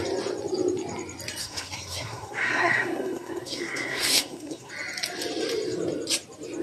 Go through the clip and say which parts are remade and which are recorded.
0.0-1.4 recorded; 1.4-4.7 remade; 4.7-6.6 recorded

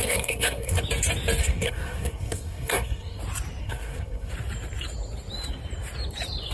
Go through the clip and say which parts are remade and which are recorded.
0.0-0.8 remade; 0.8-1.4 recorded; 1.4-3.2 remade; 3.2-3.6 recorded; 3.6-4.3 remade; 4.3-6.5 recorded

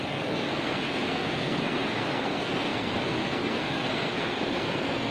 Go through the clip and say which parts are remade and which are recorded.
0.0-5.1 remade

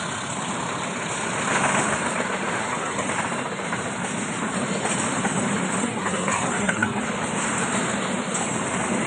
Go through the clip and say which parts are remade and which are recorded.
0.0-2.6 recorded; 2.6-3.1 remade; 3.1-5.8 recorded; 5.8-7.0 remade; 7.0-9.1 recorded

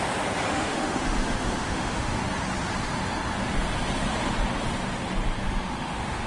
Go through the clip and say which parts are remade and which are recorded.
0.0-0.5 recorded; 0.5-2.2 remade; 2.2-5.4 recorded; 5.4-6.3 remade

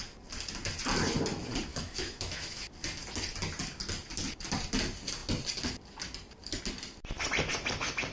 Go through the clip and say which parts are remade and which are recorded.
0.0-1.7 recorded; 1.7-2.6 remade; 2.6-8.1 recorded

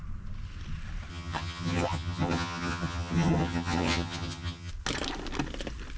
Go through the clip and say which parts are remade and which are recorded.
0.0-1.1 recorded; 1.1-4.7 remade; 4.7-6.0 recorded